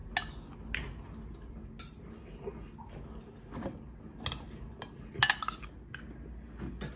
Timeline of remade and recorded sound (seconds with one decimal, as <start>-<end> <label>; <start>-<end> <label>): 0.0-7.0 recorded